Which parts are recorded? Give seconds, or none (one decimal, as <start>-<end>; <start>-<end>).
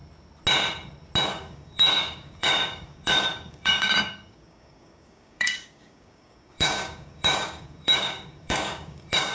0.0-1.3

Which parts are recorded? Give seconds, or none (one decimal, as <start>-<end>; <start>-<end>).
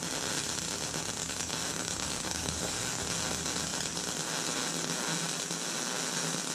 0.0-1.2; 3.0-6.5